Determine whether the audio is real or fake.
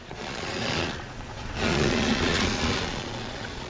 fake